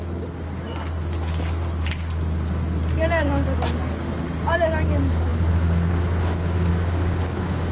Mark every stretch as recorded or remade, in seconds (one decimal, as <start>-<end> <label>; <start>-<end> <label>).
0.0-7.7 recorded